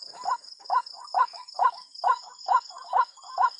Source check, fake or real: fake